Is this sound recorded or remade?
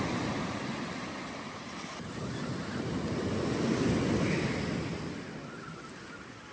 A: recorded